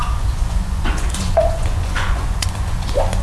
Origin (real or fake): fake